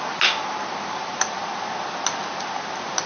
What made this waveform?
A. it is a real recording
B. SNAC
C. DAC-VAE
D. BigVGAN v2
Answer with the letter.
A